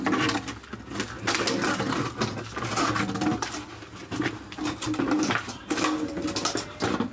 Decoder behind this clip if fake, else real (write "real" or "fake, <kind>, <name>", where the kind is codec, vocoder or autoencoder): real